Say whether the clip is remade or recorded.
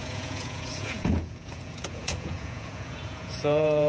remade